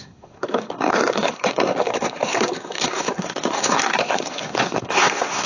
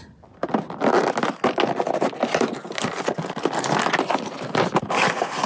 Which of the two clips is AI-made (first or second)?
first